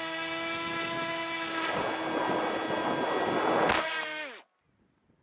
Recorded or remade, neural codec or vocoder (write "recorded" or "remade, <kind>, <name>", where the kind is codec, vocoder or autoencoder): recorded